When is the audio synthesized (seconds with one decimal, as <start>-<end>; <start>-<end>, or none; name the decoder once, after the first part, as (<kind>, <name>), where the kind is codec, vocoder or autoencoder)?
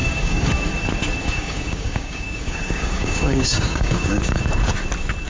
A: 0.0-0.5 (codec, DAC); 1.2-4.4